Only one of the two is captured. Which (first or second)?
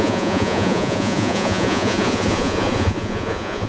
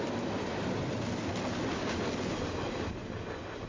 second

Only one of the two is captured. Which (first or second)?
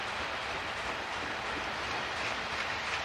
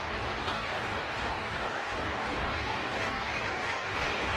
first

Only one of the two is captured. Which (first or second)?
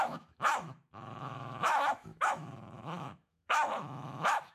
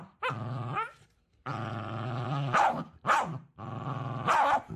second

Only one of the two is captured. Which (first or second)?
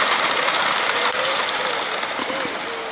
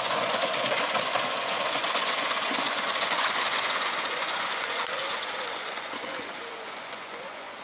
first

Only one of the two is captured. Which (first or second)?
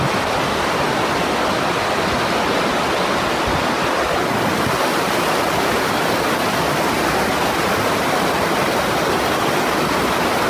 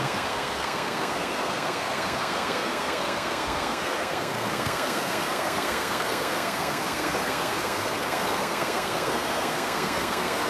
first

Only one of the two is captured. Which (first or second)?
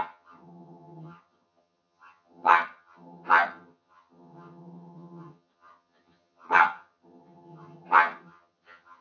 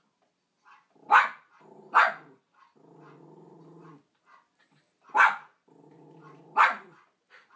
second